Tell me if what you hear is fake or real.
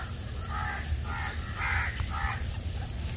real